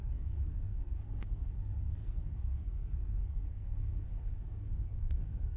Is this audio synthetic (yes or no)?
yes